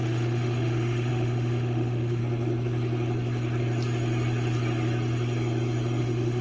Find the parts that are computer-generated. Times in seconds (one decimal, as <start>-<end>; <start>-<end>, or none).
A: 0.0-2.2; 6.0-6.4